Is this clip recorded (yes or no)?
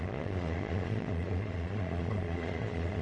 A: no